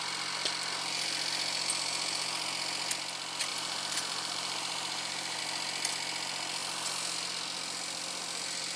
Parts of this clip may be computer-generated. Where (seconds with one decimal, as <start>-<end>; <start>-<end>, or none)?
3.5-5.4